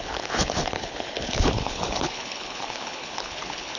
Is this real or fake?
fake